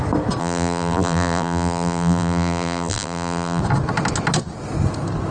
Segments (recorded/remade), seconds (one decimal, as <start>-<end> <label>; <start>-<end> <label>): 0.0-0.4 recorded; 0.4-3.6 remade; 3.6-5.3 recorded